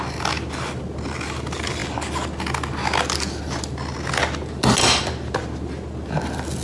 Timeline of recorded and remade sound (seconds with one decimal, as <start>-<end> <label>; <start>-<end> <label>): 0.0-6.6 recorded